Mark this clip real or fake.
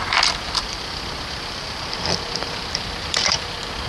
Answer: fake